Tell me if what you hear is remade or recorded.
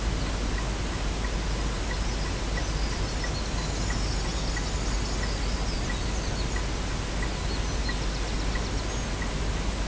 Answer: recorded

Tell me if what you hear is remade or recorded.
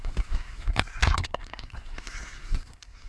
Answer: remade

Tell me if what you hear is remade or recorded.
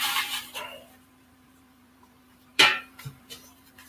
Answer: remade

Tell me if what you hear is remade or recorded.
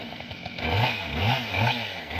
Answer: remade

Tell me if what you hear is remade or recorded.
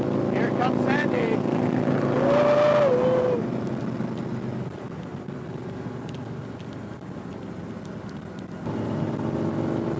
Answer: recorded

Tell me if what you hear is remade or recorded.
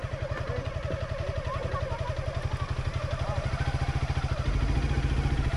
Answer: recorded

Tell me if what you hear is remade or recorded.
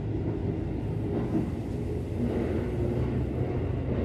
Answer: recorded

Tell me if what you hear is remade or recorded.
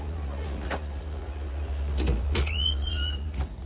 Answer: remade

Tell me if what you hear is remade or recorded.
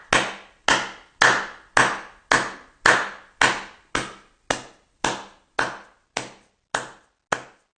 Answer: recorded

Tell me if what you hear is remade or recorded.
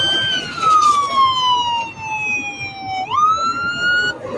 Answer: recorded